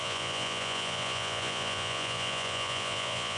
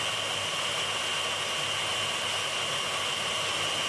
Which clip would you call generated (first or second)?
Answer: first